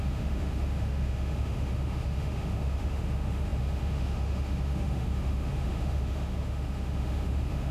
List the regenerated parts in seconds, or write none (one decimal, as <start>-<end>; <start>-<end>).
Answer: 0.0-7.7